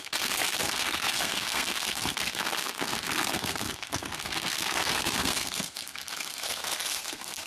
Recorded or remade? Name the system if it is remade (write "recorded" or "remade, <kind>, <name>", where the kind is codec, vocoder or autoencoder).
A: remade, codec, SNAC